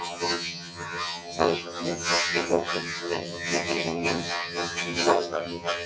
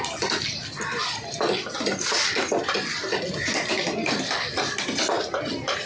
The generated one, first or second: first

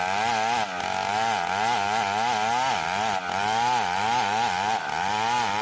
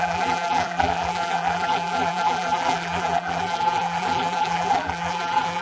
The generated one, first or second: second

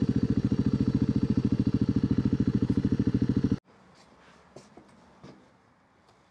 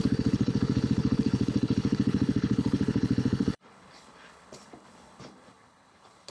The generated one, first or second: second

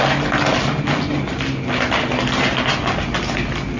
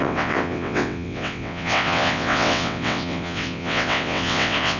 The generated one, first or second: second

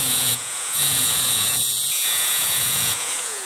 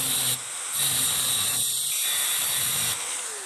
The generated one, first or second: first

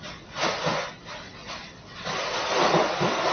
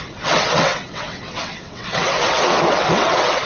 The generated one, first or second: second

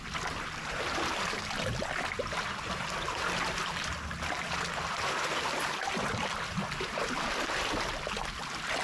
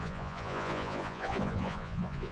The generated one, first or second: second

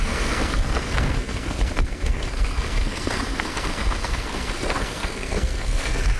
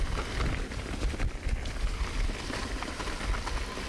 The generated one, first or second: first